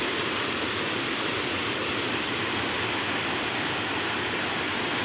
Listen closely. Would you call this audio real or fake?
fake